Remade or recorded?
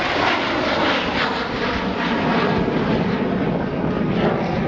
recorded